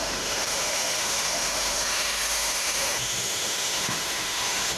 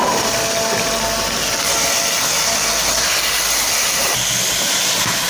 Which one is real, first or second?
second